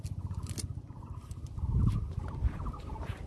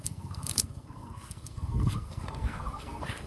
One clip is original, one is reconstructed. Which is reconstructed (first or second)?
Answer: second